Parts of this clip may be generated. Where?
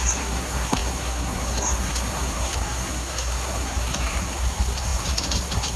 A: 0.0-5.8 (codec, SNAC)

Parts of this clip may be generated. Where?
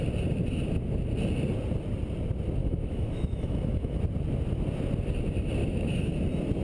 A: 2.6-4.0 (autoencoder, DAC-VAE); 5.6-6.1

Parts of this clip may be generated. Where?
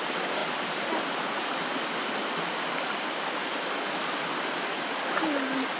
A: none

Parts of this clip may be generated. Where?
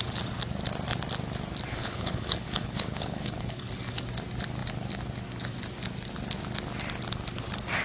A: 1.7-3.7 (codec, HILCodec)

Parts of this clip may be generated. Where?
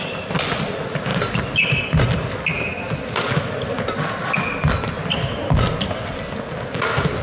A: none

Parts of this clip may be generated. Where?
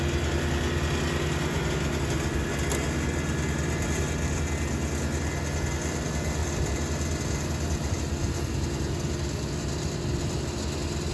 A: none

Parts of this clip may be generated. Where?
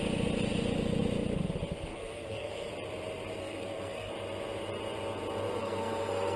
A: 1.9-2.7 (codec, SNAC); 3.4-4.1; 5.6-6.4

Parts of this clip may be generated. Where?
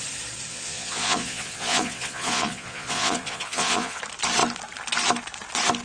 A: 0.5-4.0 (vocoder, Vocos)